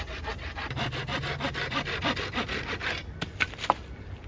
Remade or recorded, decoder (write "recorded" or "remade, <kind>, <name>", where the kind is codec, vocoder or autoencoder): recorded